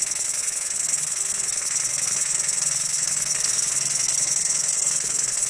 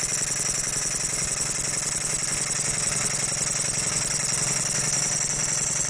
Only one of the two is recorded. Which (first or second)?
second